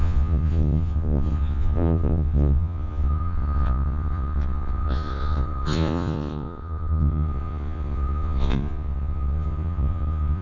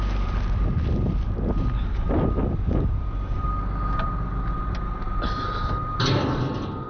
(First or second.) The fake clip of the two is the first